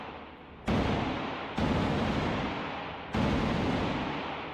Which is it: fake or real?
real